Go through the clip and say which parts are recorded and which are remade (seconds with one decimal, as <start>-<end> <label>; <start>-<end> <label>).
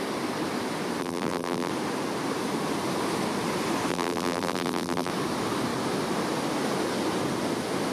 0.0-1.0 recorded; 1.0-1.7 remade; 1.7-3.9 recorded; 3.9-5.1 remade; 5.1-7.9 recorded